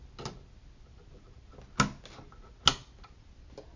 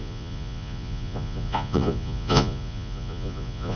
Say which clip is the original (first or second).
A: first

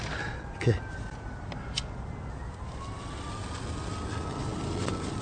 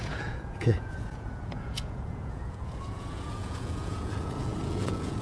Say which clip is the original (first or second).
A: first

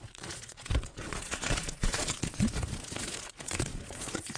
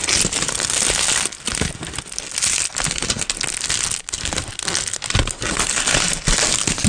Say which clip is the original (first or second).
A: second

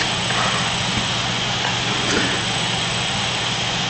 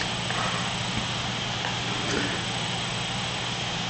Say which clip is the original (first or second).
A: second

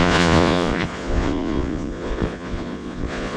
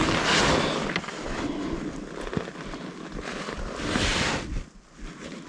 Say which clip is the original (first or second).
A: second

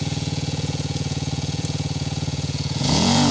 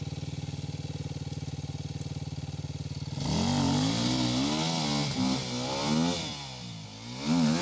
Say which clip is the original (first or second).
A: second